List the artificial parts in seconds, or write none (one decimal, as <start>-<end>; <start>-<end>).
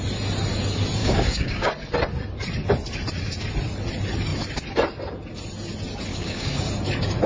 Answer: 1.0-1.7; 6.1-6.6